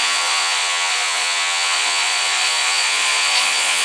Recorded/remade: remade